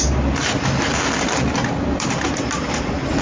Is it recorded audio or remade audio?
recorded